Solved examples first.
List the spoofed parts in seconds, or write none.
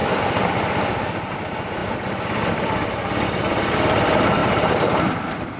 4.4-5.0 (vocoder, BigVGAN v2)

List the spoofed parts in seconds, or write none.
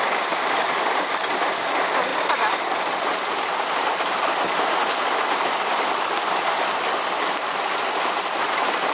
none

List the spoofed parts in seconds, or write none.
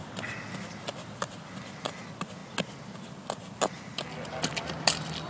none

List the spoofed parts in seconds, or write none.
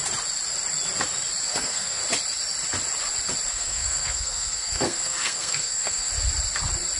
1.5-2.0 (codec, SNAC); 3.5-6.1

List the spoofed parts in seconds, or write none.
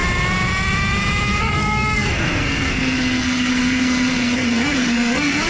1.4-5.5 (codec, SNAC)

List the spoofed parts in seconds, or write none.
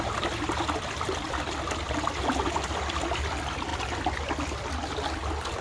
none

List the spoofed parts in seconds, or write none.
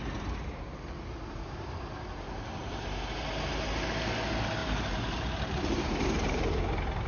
2.6-3.2 (vocoder, BigVGAN v2); 4.6-6.6